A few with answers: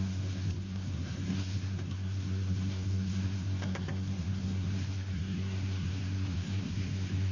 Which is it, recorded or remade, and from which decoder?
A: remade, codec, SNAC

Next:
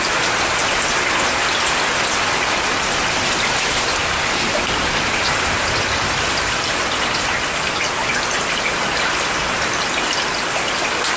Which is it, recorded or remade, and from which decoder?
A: recorded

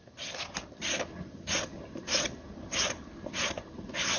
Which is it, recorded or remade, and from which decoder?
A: recorded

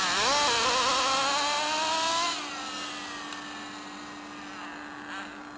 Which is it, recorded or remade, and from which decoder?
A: recorded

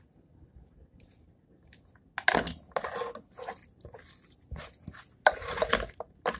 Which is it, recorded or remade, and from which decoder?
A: recorded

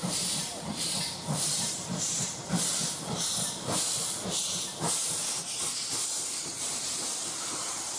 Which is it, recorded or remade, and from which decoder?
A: remade, vocoder, BigVGAN v2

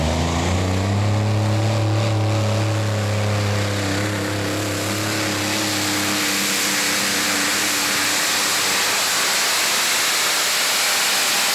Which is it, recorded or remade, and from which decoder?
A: recorded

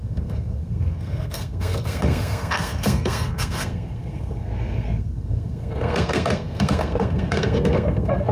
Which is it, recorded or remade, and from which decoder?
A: remade, codec, SNAC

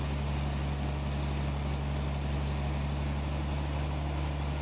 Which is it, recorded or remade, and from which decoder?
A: recorded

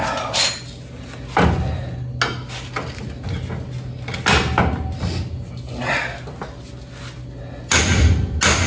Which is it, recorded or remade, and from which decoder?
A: recorded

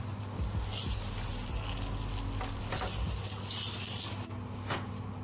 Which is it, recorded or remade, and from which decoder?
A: recorded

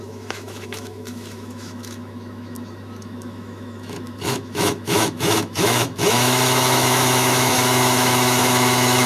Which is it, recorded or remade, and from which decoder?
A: remade, autoencoder, DAC-VAE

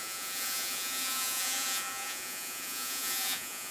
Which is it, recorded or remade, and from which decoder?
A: remade, vocoder, Vocos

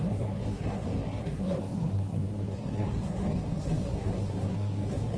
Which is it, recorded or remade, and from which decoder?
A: remade, codec, SNAC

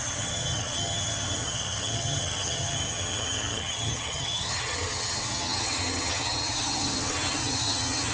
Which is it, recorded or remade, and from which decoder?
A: remade, vocoder, HiFi-GAN